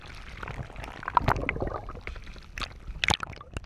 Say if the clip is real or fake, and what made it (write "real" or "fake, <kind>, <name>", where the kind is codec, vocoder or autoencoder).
real